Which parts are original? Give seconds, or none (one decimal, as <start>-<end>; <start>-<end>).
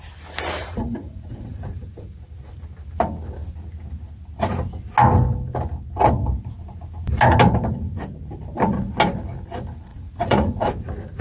0.0-0.6; 2.2-9.9; 10.7-11.2